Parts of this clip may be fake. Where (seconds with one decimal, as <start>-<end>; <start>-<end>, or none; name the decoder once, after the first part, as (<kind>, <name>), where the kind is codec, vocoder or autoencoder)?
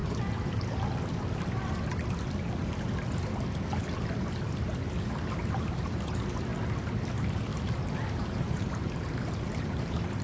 5.0-6.5 (vocoder, BigVGAN v2); 7.1-10.2